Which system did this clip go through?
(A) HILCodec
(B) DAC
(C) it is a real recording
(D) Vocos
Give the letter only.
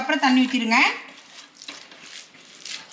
C